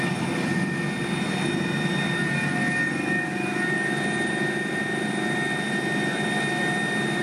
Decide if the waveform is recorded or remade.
recorded